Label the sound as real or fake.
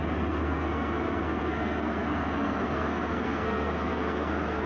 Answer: fake